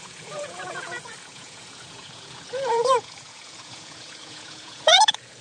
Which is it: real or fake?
fake